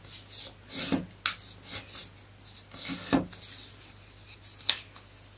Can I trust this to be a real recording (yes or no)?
yes